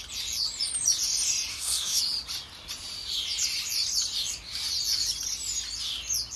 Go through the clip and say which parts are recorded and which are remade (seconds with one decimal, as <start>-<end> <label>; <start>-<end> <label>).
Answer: 0.0-1.5 recorded; 1.5-2.0 remade; 2.0-6.4 recorded